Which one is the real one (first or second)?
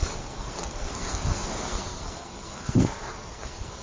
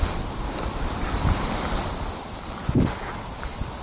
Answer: second